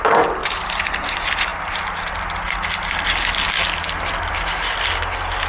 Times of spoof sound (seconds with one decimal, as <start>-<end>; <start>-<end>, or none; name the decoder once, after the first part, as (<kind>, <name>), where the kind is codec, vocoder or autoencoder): 0.4-1.1 (vocoder, BigVGAN v2)